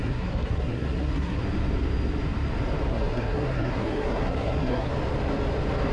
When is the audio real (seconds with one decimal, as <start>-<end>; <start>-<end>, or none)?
1.4-2.9; 4.9-5.9